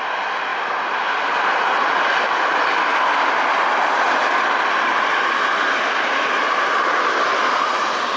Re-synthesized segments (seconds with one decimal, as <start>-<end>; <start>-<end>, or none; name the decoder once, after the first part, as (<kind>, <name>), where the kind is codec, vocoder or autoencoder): none